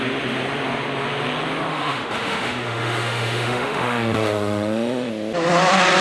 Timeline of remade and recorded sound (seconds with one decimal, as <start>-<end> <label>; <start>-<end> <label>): 0.0-1.7 recorded; 1.7-5.1 remade; 5.1-6.0 recorded